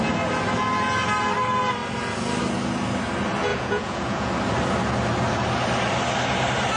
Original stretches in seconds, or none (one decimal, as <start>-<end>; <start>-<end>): 0.0-3.5; 4.3-6.8